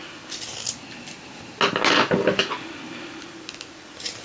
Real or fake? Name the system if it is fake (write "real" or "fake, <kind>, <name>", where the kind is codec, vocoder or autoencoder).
real